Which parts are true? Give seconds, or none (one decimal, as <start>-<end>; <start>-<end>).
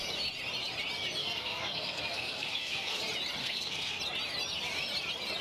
0.0-1.2; 3.0-3.4; 4.0-5.4